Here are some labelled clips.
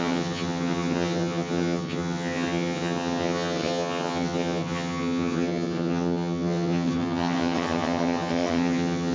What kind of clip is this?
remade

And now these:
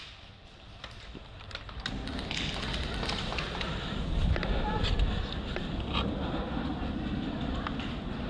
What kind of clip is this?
recorded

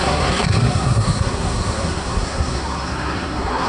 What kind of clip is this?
remade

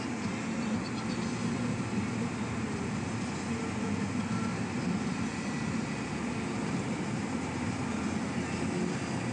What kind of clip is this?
recorded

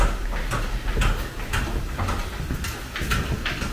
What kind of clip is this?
recorded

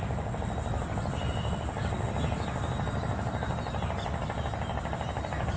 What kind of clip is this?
recorded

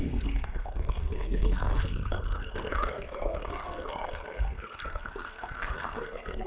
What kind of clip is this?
remade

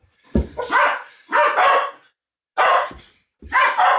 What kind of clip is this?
recorded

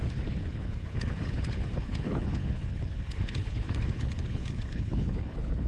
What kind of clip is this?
remade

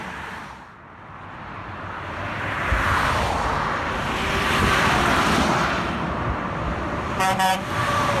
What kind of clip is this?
remade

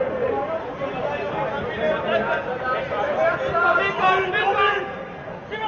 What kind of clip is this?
recorded